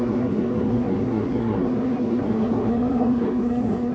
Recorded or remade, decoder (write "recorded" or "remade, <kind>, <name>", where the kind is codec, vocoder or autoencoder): remade, codec, SNAC